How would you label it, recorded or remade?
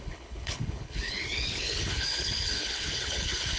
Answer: remade